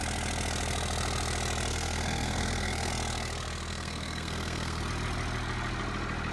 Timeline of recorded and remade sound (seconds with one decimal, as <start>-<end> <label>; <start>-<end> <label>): 0.0-1.7 recorded; 1.7-2.9 remade; 2.9-3.7 recorded; 3.7-4.8 remade; 4.8-6.3 recorded